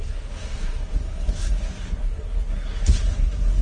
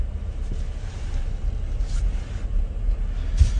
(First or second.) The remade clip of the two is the first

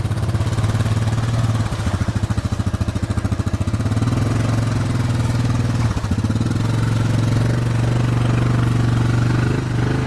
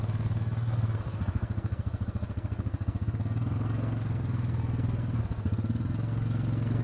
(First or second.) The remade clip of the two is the second